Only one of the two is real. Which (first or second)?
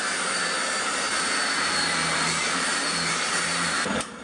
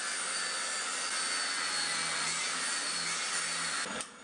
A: second